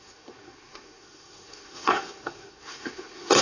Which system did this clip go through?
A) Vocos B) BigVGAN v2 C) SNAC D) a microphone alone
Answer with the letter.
C